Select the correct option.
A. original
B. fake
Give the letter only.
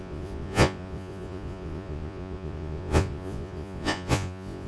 B